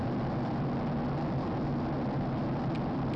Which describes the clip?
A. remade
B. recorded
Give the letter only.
B